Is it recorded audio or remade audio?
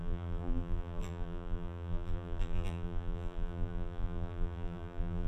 remade